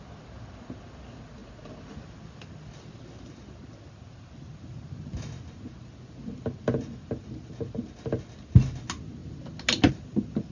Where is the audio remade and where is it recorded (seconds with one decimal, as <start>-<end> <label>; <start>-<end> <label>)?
0.0-10.5 recorded

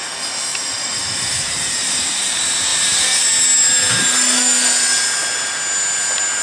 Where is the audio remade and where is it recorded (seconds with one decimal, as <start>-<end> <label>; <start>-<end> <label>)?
0.0-0.5 recorded; 0.5-2.3 remade; 2.3-6.4 recorded

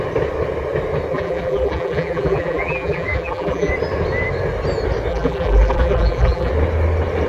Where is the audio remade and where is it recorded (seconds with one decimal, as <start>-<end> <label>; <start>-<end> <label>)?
0.0-1.1 recorded; 1.1-3.7 remade; 3.7-5.1 recorded; 5.1-6.5 remade; 6.5-7.3 recorded

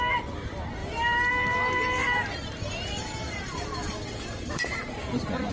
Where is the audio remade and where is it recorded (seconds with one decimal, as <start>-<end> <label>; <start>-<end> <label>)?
0.0-0.8 recorded; 0.8-1.3 remade; 1.3-2.0 recorded; 2.0-5.5 remade

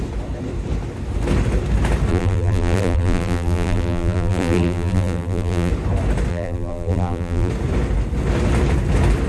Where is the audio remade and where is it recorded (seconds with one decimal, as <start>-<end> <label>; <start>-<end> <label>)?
0.0-2.1 recorded; 2.1-5.7 remade; 5.7-6.3 recorded; 6.3-7.5 remade; 7.5-9.3 recorded